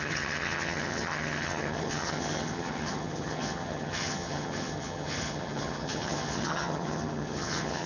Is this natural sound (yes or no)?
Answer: no